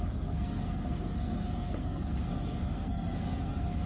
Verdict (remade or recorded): remade